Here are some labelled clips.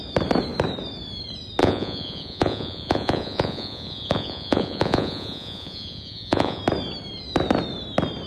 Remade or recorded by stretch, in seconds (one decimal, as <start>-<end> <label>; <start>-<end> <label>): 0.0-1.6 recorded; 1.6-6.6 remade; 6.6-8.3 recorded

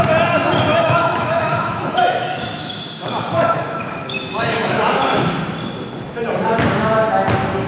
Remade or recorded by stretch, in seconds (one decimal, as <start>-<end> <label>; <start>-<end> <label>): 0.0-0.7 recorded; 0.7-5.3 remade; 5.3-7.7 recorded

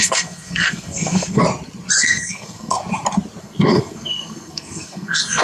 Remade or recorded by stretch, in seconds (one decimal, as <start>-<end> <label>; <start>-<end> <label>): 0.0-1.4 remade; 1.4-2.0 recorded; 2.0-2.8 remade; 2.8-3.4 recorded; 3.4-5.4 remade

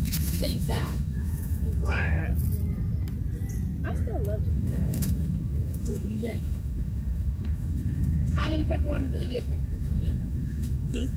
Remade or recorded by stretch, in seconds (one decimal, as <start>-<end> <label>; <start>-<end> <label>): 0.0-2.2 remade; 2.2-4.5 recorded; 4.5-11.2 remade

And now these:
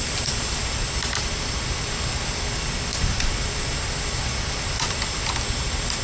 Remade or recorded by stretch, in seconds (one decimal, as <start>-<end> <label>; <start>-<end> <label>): 0.0-6.0 recorded

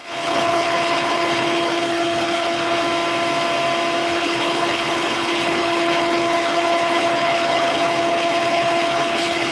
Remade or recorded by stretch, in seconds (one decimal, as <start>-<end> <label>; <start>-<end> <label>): 0.0-2.8 remade; 2.8-4.1 recorded; 4.1-9.5 remade

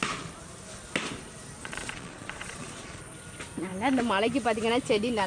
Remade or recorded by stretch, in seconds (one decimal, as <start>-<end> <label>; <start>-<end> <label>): 0.0-1.6 recorded; 1.6-3.0 remade; 3.0-5.3 recorded

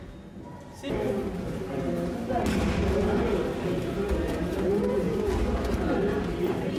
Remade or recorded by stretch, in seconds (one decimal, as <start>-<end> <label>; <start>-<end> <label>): 0.0-0.5 recorded; 0.5-1.1 remade; 1.1-6.8 recorded